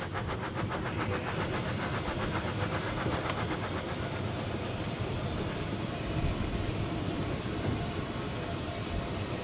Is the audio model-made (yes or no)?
yes